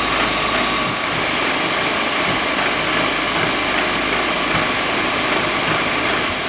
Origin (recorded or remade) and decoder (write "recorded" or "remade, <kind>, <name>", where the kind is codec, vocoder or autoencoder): recorded